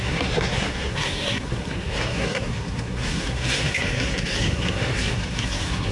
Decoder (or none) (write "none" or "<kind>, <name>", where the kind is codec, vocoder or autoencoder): codec, SNAC